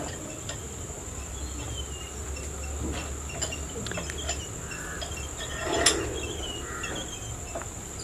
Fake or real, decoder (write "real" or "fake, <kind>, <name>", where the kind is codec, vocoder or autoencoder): real